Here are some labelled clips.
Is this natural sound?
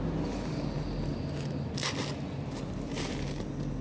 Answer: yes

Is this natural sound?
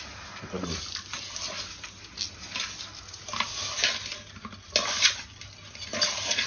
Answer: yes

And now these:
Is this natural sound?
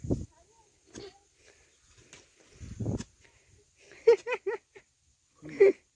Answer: yes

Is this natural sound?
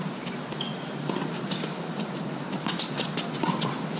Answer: no